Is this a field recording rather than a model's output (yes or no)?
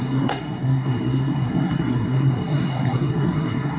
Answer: no